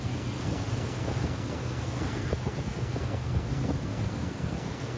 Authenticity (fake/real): fake